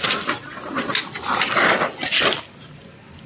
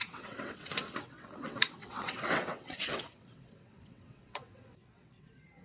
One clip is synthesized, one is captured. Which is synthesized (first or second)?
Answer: second